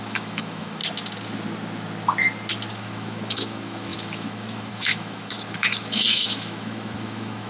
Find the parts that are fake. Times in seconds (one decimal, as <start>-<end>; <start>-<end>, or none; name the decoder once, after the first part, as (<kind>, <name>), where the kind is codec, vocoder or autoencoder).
0.0-0.8 (autoencoder, DAC-VAE); 2.7-7.5